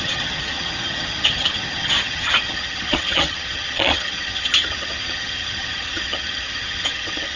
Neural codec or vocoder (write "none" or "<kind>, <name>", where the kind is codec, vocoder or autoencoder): vocoder, HiFi-GAN